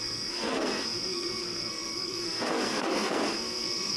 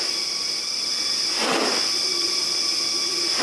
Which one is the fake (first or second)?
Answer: first